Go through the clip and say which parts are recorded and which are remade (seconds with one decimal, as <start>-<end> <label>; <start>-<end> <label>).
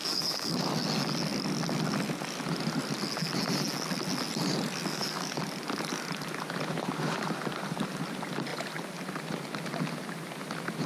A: 0.0-0.6 remade; 0.6-4.9 recorded; 4.9-5.4 remade; 5.4-10.9 recorded